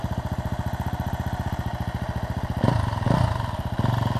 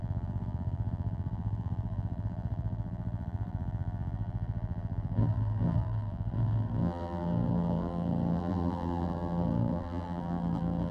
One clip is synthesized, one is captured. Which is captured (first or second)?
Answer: first